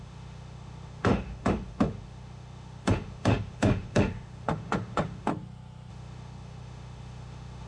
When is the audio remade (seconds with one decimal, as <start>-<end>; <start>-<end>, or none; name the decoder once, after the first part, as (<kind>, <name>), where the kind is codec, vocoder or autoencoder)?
0.0-5.3 (autoencoder, DAC-VAE); 5.9-7.7